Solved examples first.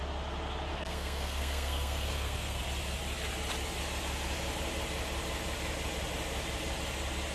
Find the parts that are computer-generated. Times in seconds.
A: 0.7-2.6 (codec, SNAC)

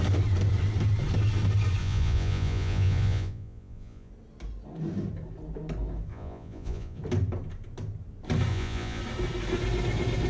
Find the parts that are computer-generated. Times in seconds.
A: 1.8-4.1 (vocoder, Vocos); 6.1-7.0; 8.5-9.0

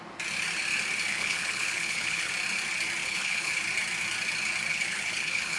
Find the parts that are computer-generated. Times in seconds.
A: 1.1-2.3 (codec, HILCodec); 3.0-3.6; 4.7-5.6

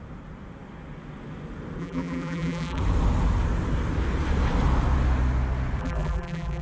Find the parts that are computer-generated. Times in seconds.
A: 1.8-2.8 (vocoder, BigVGAN v2); 5.8-6.6

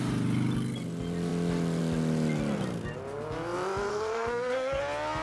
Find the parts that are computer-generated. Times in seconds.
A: 3.9-4.8 (codec, SNAC)

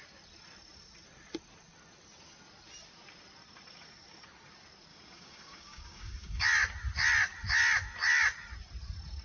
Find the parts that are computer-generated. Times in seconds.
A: 4.9-6.4 (codec, DAC)